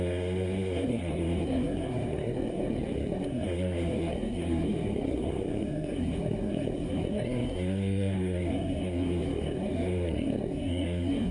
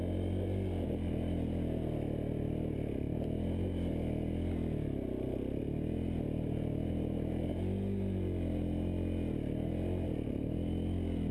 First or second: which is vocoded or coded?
first